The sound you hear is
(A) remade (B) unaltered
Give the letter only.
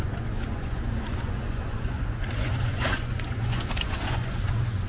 A